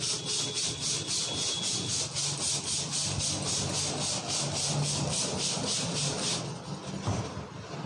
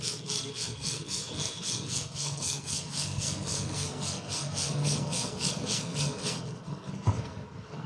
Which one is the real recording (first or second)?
first